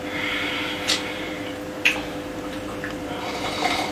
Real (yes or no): no